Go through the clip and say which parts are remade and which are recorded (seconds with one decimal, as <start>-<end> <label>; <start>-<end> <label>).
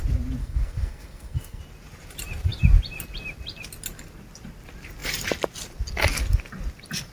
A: 0.0-0.4 recorded; 0.4-1.6 remade; 1.6-7.1 recorded